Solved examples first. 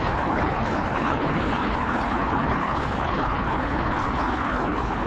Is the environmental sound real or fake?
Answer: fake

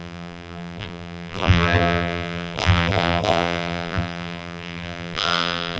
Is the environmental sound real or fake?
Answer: fake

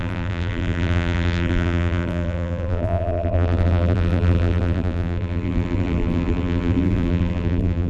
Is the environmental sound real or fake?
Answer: fake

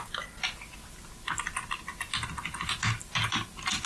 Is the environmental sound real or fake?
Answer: real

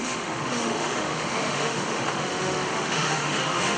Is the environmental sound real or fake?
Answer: fake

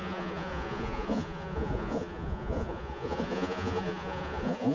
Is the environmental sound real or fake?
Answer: fake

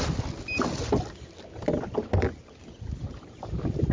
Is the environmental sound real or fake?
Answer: real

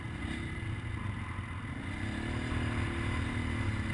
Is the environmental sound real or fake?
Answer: real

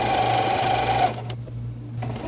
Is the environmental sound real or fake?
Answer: real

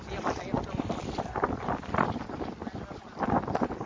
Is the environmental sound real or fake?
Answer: real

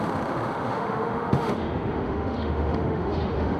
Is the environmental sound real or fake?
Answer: fake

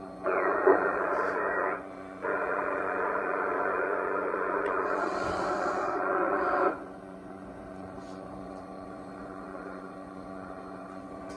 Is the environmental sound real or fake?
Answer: fake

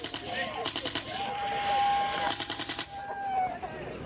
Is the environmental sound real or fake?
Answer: fake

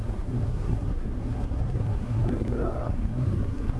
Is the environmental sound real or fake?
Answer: fake